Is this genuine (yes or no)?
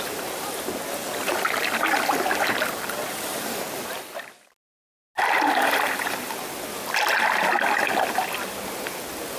yes